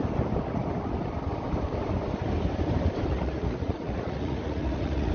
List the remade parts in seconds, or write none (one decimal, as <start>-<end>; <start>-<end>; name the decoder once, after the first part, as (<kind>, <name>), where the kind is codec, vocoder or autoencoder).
3.1-5.1 (vocoder, Vocos)